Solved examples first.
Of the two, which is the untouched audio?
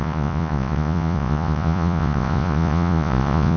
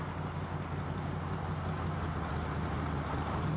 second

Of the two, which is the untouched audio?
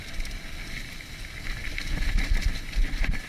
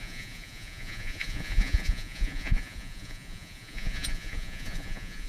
first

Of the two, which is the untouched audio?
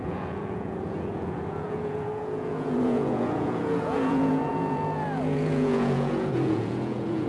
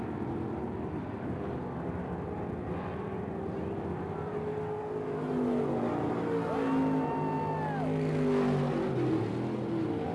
second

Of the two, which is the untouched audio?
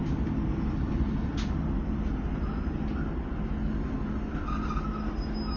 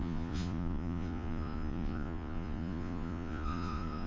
first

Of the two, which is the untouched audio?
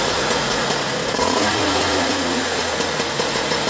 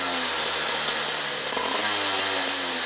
second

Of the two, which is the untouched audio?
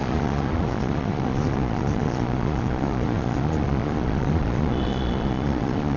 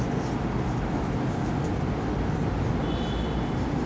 second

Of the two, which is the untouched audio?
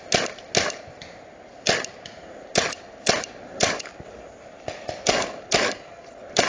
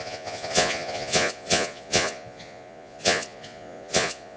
first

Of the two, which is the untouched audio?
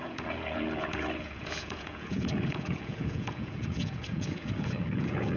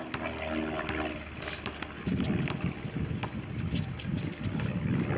second